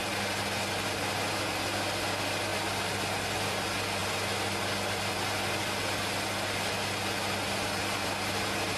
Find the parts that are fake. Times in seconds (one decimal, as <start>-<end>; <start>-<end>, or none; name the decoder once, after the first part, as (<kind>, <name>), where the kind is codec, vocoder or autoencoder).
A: none